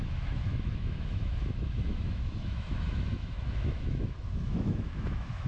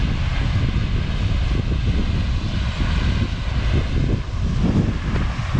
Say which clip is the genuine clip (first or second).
second